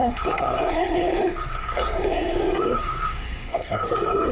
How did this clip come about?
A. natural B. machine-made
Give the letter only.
B